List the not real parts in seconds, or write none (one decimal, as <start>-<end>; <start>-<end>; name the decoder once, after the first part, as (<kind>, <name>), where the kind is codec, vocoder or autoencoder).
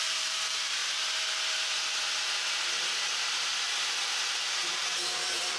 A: 0.0-0.8 (vocoder, BigVGAN v2); 4.2-5.6